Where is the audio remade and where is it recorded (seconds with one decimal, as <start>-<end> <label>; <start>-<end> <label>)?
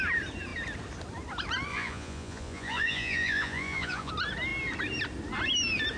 0.0-1.7 recorded; 1.7-4.1 remade; 4.1-6.0 recorded